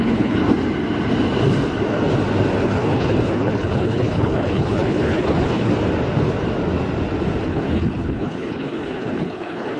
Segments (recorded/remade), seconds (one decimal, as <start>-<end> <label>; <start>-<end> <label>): 0.0-0.4 remade; 0.4-2.6 recorded; 2.6-5.7 remade; 5.7-7.4 recorded; 7.4-9.8 remade